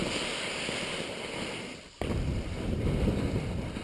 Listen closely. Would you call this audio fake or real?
real